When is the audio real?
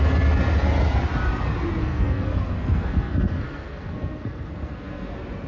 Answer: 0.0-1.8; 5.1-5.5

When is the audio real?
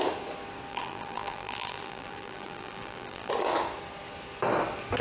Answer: 0.0-0.7; 3.3-5.0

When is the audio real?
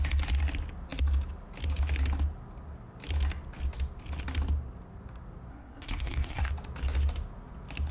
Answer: 0.0-5.5; 6.5-7.9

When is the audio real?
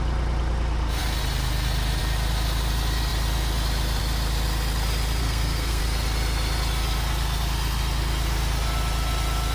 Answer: 0.0-5.2; 5.8-9.5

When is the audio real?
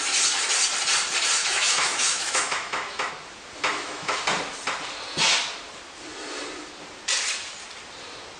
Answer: 0.0-1.4; 3.1-3.7; 4.2-8.4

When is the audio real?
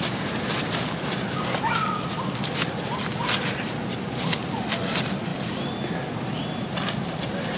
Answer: 0.0-7.6